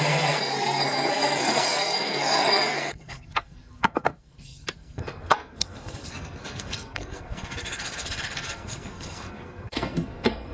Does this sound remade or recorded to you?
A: remade